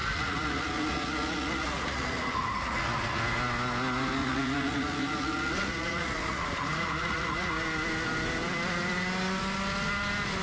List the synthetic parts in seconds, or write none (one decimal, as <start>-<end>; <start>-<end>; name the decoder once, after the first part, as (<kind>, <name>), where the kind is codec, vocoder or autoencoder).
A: 0.0-3.2 (vocoder, Vocos); 4.2-7.5

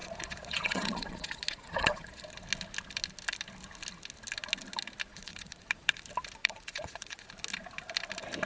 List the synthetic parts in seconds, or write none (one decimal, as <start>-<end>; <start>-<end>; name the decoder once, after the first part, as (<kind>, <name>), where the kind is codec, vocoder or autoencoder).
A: 0.0-2.2 (vocoder, Vocos); 5.1-6.0; 6.4-7.3

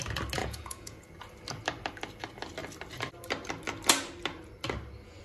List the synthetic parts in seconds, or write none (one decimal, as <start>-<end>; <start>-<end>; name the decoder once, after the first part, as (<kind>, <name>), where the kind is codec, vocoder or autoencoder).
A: 0.4-1.1 (vocoder, Vocos)

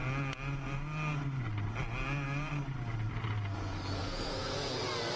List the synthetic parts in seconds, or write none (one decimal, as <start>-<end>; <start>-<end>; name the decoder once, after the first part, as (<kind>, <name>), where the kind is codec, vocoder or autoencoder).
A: 4.0-4.5 (vocoder, Vocos)

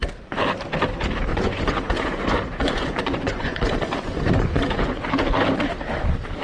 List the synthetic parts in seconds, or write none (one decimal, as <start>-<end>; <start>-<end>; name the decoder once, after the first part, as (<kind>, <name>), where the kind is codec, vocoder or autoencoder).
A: 1.3-5.1 (vocoder, Vocos)

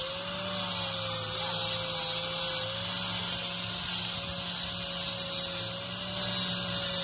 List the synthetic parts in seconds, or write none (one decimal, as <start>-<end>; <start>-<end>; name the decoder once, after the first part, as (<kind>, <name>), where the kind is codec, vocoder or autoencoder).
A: none

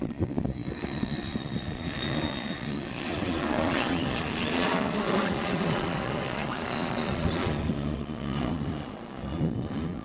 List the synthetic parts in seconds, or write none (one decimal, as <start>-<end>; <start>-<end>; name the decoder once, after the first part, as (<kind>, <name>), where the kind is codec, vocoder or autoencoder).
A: 0.0-10.0 (vocoder, Vocos)

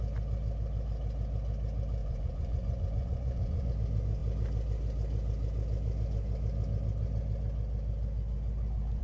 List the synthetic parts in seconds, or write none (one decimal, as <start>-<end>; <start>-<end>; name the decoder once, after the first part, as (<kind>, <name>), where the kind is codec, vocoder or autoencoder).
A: 2.0-3.7 (vocoder, Vocos)